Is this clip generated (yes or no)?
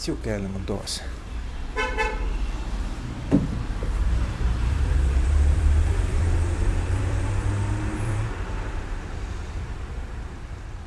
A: yes